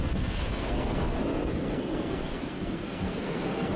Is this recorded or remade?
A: remade